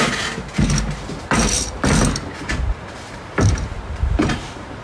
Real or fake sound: fake